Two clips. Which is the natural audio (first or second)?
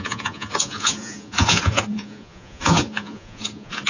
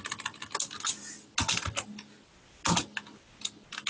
second